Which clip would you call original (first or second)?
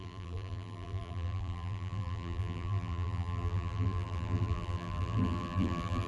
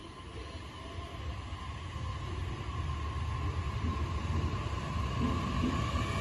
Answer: second